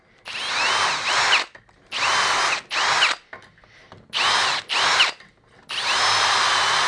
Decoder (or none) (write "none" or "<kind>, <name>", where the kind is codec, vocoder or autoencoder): none